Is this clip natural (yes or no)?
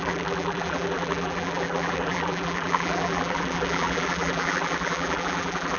no